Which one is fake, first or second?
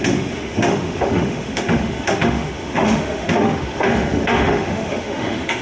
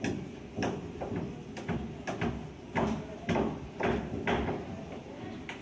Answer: first